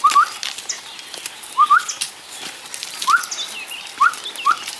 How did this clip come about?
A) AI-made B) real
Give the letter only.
B